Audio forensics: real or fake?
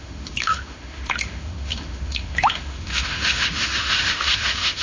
fake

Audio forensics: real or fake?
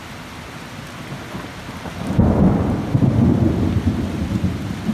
real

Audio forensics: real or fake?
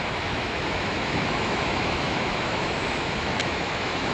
fake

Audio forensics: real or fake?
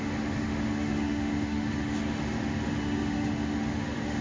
fake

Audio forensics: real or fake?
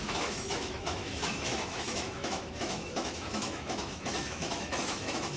fake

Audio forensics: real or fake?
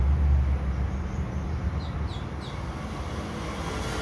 real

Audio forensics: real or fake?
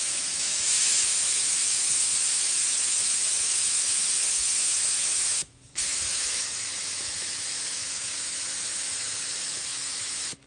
fake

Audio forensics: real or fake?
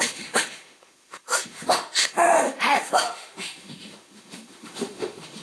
fake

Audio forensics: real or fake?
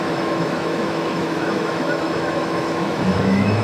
fake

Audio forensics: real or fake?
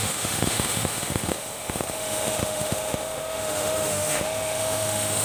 fake